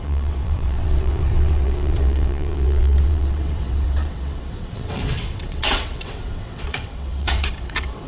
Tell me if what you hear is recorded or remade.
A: remade